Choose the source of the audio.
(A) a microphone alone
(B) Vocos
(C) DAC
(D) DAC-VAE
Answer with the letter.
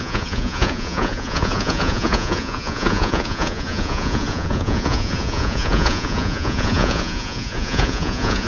B